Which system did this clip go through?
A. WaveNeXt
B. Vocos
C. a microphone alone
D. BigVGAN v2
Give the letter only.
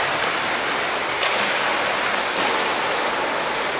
C